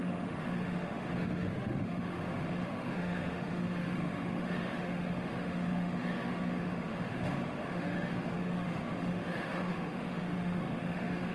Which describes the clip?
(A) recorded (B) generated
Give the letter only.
B